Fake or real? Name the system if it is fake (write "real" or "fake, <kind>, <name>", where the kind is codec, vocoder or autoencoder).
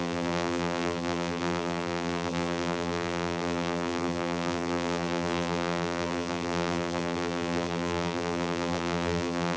fake, vocoder, BigVGAN v2